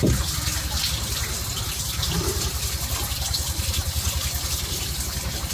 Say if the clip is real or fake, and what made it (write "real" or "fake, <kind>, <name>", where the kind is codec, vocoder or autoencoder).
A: real